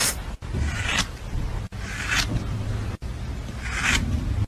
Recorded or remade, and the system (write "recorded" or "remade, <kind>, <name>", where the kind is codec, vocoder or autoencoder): recorded